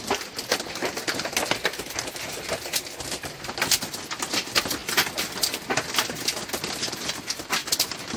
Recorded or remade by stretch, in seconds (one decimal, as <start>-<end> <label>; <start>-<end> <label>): 0.0-8.2 recorded